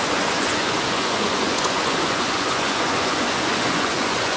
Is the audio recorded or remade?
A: remade